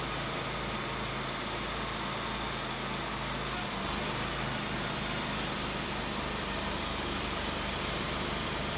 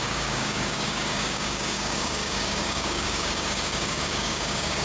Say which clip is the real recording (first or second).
first